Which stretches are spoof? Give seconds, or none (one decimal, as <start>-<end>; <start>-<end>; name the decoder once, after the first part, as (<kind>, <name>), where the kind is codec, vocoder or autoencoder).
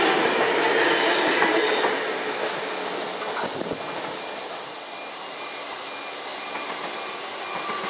none